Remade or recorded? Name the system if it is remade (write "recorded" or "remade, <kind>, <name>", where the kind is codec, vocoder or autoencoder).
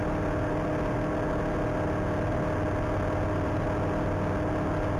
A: recorded